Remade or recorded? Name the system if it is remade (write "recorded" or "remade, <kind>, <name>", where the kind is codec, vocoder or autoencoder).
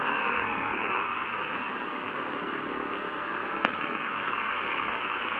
remade, codec, SNAC